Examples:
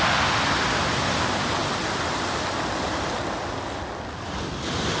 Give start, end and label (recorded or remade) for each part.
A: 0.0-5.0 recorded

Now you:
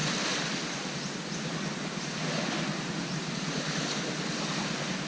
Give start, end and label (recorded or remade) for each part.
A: 0.0-5.1 recorded

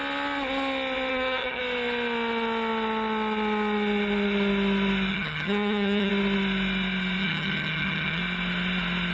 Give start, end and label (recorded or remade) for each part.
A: 0.0-1.1 recorded; 1.1-1.6 remade; 1.6-5.1 recorded; 5.1-6.1 remade; 6.1-7.2 recorded; 7.2-8.2 remade; 8.2-9.1 recorded

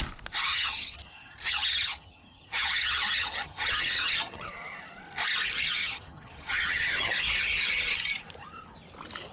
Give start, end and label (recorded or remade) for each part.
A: 0.0-0.5 recorded; 0.5-4.5 remade; 4.5-5.8 recorded; 5.8-7.1 remade; 7.1-9.3 recorded